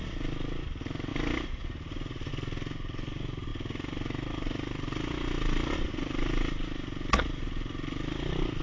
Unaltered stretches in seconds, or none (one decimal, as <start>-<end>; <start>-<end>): 0.0-8.6